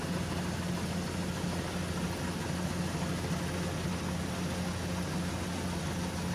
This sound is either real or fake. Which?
real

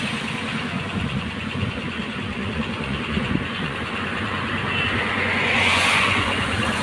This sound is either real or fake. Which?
fake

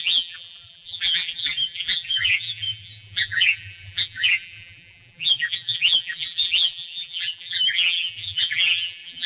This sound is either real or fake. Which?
fake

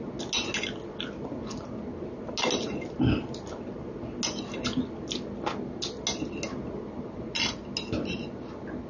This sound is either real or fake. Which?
real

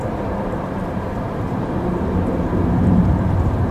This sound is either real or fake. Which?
fake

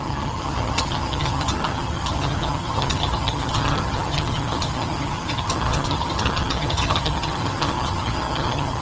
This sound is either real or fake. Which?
fake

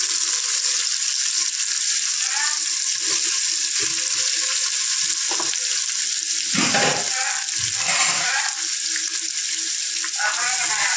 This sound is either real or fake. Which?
real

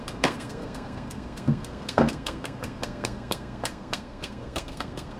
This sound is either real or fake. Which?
fake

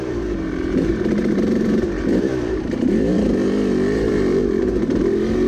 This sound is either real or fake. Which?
fake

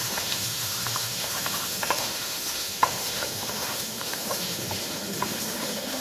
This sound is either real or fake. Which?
fake